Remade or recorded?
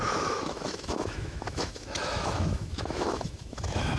remade